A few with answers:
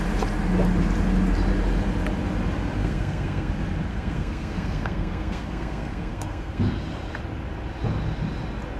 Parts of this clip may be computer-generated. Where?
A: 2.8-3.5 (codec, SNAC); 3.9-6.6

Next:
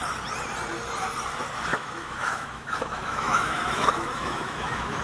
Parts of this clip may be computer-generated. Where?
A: 1.7-5.0 (autoencoder, DAC-VAE)

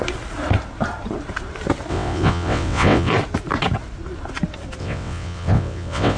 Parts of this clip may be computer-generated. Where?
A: 1.9-3.1 (vocoder, WaveNeXt); 4.8-6.2

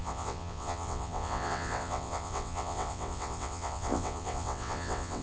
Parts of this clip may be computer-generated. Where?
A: 0.0-5.2 (vocoder, WaveNeXt)

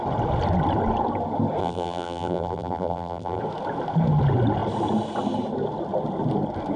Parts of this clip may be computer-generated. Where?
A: 1.6-3.4 (vocoder, BigVGAN v2)

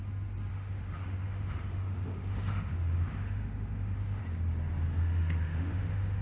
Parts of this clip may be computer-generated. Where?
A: 0.5-4.2 (autoencoder, DAC-VAE); 5.0-6.2